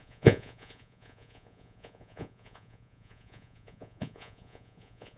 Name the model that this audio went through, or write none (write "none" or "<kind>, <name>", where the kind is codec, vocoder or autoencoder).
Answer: vocoder, Vocos